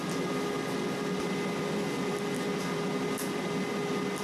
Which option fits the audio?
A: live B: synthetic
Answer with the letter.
A